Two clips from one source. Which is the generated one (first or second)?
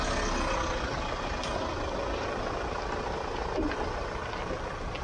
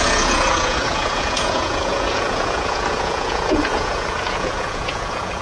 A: second